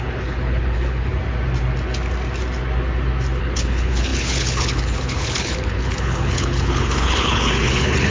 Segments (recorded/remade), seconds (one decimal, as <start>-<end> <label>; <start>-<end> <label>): 0.0-1.1 remade; 1.1-3.4 recorded; 3.4-8.1 remade